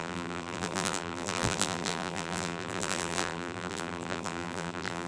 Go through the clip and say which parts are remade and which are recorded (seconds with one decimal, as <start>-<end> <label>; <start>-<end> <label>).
0.0-5.1 remade